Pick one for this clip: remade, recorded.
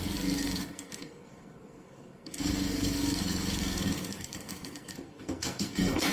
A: remade